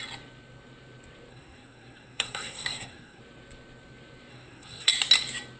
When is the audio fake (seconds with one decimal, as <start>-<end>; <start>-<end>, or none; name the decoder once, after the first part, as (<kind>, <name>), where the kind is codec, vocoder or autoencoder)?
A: 1.3-3.2 (codec, SNAC); 4.3-4.9